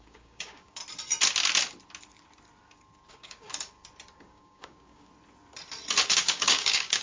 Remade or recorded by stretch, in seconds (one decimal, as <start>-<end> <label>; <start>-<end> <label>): 0.0-0.8 remade; 0.8-3.1 recorded; 3.1-3.5 remade; 3.5-4.2 recorded; 4.2-5.1 remade; 5.1-6.1 recorded; 6.1-7.0 remade